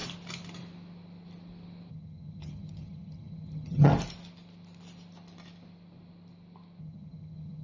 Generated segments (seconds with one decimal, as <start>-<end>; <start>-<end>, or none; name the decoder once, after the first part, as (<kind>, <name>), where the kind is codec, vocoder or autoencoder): 1.9-3.9 (vocoder, HiFi-GAN); 6.8-7.6